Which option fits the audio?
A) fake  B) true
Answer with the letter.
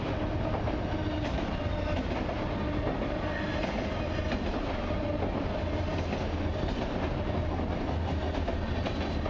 B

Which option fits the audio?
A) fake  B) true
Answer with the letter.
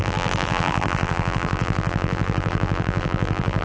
A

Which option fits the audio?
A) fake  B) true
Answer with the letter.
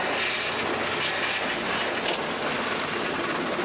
B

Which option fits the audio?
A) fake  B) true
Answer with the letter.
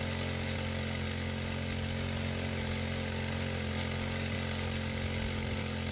B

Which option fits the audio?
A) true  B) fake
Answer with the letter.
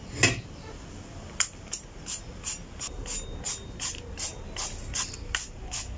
A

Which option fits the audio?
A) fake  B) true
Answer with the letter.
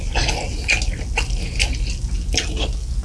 B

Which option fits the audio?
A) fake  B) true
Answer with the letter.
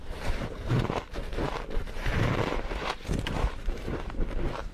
A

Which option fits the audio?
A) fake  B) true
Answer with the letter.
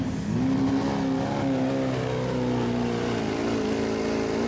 B